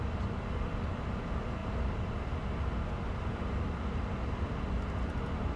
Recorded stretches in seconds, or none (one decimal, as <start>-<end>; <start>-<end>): 0.0-5.6